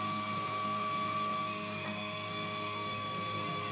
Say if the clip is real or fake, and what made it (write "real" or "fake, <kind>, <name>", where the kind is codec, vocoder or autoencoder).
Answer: fake, codec, SNAC